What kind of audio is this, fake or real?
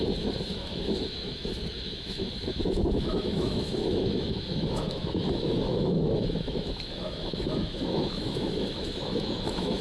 fake